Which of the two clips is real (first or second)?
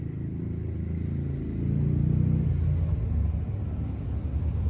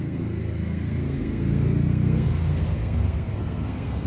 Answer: first